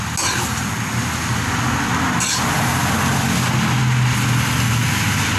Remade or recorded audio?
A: recorded